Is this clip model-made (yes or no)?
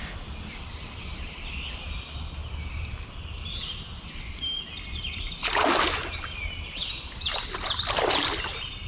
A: no